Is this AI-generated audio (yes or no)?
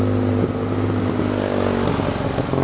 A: no